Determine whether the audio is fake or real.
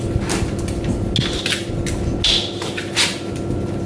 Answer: real